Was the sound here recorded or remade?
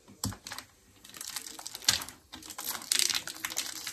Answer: recorded